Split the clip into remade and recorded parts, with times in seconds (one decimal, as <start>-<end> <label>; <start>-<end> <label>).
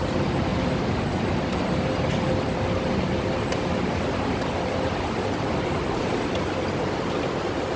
0.0-7.8 recorded